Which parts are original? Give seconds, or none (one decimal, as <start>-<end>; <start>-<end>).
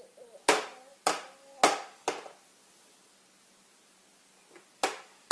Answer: 0.0-5.3